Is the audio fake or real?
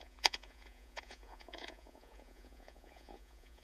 fake